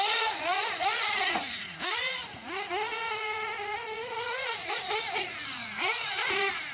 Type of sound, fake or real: fake